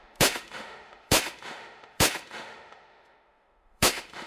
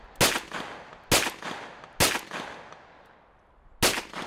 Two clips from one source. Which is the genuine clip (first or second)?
second